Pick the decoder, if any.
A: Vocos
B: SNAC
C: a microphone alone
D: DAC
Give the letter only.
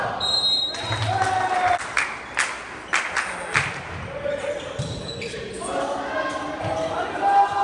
C